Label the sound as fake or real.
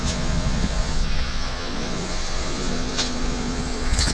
fake